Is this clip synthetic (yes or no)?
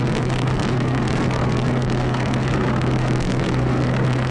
yes